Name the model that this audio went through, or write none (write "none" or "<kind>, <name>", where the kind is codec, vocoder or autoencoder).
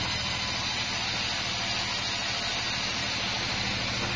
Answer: none